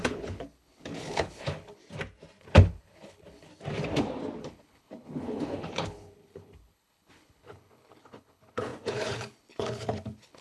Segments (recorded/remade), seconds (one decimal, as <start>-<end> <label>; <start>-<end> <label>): 0.0-1.8 remade; 1.8-2.4 recorded; 2.4-3.5 remade; 3.5-4.4 recorded; 4.4-10.4 remade